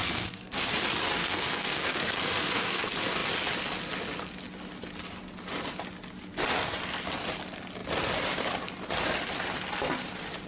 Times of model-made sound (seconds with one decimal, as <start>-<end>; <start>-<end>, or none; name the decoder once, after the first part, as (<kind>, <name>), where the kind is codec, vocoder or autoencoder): 0.0-0.6 (codec, SNAC); 1.2-2.8

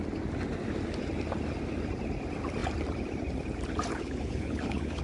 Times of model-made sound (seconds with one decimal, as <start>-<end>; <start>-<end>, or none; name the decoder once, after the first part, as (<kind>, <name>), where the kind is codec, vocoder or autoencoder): 3.9-5.0 (codec, HILCodec)

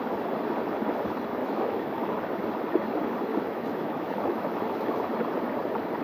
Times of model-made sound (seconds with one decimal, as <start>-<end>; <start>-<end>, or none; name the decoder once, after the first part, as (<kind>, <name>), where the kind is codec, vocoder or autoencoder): 1.4-2.1 (autoencoder, DAC-VAE); 3.3-5.1

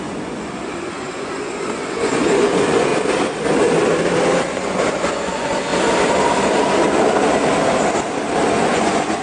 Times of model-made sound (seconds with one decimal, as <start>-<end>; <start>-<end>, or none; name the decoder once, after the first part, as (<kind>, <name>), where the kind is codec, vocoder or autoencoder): 0.0-2.9 (vocoder, Vocos); 4.4-5.7; 8.5-9.2

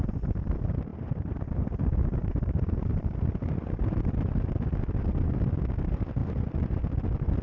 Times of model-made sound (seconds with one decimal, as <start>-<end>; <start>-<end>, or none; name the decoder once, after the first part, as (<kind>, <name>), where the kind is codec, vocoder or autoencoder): 0.9-4.2 (vocoder, BigVGAN v2); 6.2-6.8

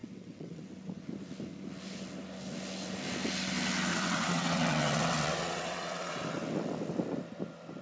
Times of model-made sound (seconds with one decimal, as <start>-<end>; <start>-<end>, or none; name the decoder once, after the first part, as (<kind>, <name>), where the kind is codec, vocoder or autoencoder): 0.0-0.7 (vocoder, WaveNeXt); 3.9-6.1

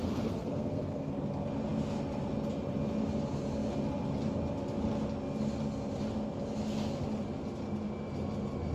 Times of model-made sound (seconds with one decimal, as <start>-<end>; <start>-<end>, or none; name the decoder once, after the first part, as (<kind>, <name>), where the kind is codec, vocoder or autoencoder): 0.0-1.1 (codec, SNAC)

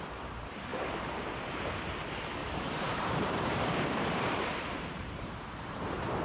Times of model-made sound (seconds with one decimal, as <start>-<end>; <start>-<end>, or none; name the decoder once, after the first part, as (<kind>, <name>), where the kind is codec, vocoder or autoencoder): 0.7-1.3 (vocoder, BigVGAN v2); 2.4-6.2